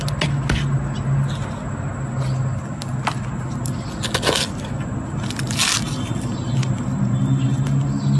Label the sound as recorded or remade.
recorded